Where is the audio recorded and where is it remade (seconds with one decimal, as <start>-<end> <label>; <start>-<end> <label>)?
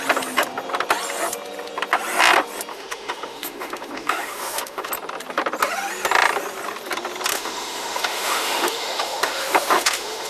0.0-2.7 recorded; 2.7-4.9 remade; 4.9-7.3 recorded; 7.3-10.3 remade